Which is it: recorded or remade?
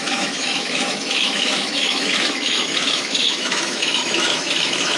remade